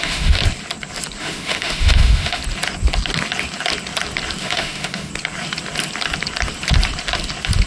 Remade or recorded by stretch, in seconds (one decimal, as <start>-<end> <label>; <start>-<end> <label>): 0.0-0.4 remade; 0.4-1.2 recorded; 1.2-2.4 remade; 2.4-4.4 recorded; 4.4-5.1 remade; 5.1-7.7 recorded